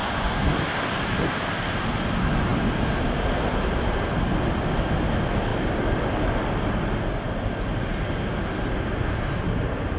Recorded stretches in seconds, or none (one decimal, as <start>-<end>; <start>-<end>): 0.5-10.0